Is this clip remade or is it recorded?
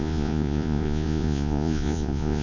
remade